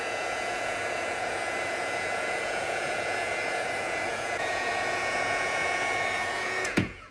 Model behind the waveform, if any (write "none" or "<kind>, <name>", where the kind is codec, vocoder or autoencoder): vocoder, Vocos